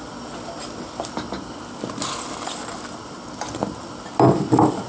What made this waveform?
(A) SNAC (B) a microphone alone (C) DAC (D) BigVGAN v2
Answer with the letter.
B